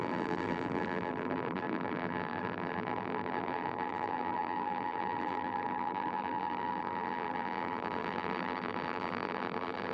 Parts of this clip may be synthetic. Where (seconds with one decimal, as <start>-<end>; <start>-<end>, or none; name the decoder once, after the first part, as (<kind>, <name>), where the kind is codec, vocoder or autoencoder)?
0.0-9.9 (vocoder, BigVGAN v2)